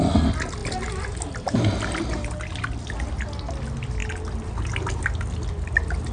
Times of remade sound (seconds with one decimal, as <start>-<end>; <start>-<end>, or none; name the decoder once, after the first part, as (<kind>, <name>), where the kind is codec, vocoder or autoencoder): none